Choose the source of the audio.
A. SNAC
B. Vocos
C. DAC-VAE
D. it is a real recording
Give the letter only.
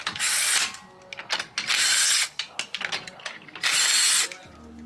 D